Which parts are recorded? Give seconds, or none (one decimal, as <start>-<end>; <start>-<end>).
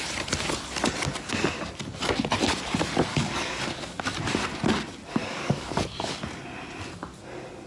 0.0-3.1; 4.0-5.2; 6.2-7.7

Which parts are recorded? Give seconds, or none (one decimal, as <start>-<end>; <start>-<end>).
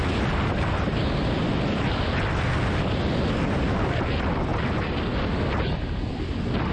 0.0-6.7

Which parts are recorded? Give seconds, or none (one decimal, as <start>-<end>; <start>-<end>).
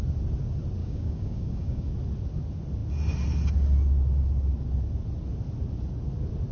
0.0-0.8; 1.9-6.5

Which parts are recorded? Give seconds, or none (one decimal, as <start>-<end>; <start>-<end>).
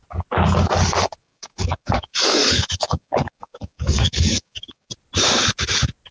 0.0-1.2; 4.9-6.1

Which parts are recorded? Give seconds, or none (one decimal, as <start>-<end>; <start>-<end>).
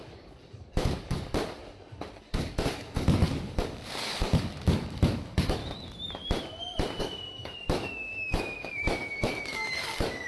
1.6-2.2; 5.6-7.0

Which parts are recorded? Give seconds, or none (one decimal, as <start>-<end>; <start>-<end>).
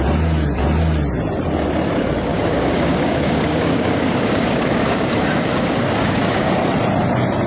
0.0-2.3; 6.5-7.5